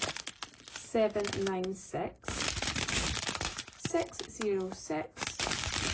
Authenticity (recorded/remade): recorded